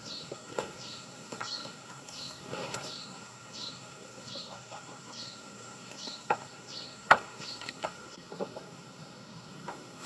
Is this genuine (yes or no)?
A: no